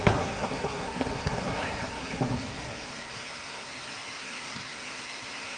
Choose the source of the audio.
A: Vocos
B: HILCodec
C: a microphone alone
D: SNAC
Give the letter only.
D